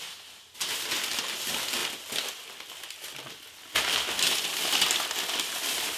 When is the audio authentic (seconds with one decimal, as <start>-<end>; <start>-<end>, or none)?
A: 0.0-6.0